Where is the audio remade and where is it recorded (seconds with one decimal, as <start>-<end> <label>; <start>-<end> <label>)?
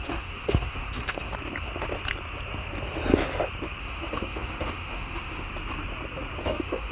0.0-1.3 remade; 1.3-3.8 recorded; 3.8-5.5 remade; 5.5-6.4 recorded; 6.4-6.9 remade